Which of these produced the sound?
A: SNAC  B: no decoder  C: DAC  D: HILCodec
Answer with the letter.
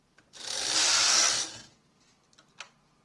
B